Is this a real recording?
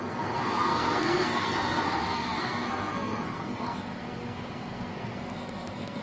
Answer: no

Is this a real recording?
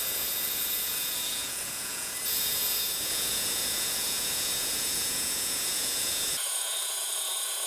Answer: no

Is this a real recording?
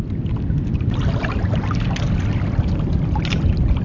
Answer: yes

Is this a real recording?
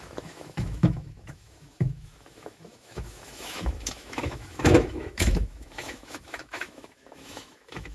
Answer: no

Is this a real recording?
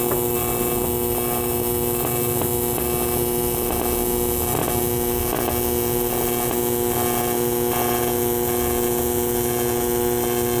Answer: yes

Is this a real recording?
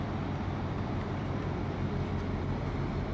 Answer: yes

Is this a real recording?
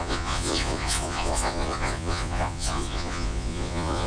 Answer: no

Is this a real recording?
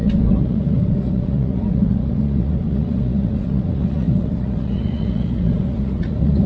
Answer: no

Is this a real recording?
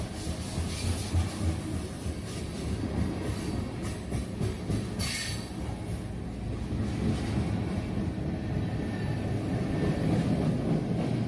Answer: yes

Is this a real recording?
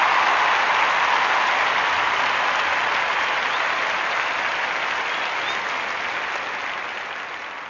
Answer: yes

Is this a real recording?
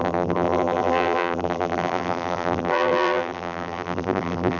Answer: no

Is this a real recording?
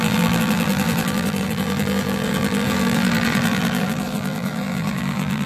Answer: no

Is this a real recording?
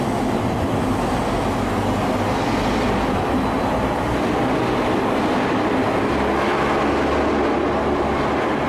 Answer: yes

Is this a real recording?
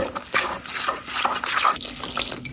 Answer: yes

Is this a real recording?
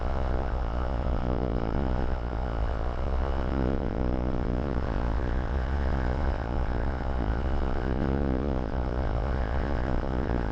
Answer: no